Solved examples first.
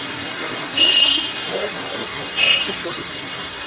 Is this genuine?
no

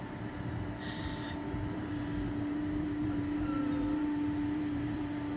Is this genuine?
no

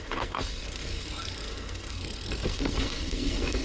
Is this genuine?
no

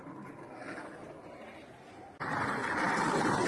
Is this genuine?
yes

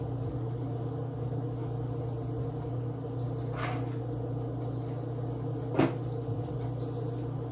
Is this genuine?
yes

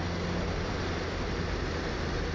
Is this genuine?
yes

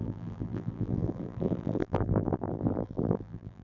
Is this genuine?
no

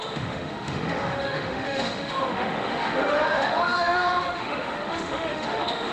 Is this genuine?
no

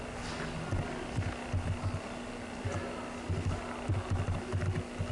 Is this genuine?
yes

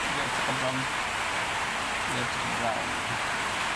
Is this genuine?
yes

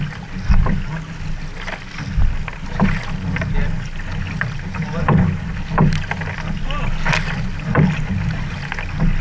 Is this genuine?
yes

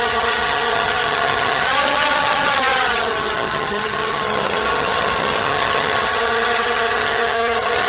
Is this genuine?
no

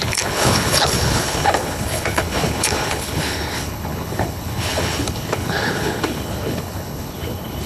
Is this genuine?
no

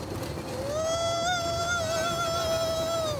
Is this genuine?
yes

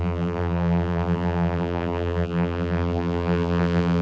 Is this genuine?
no